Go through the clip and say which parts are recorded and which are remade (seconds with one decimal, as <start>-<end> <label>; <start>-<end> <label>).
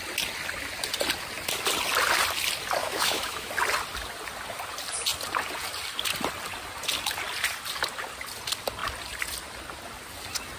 0.0-2.8 recorded; 2.8-3.5 remade; 3.5-10.6 recorded